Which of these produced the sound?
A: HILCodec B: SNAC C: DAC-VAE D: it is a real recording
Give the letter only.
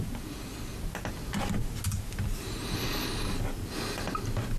D